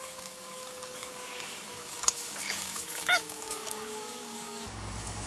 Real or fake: fake